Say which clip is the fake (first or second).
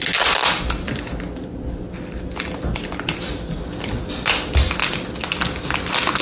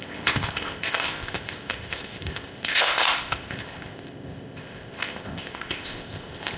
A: second